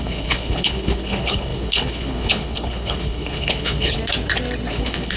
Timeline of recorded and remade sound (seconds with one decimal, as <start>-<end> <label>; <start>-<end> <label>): 0.0-4.0 remade; 4.0-4.7 recorded; 4.7-5.2 remade